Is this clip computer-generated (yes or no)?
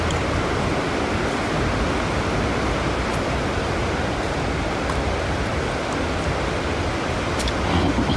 no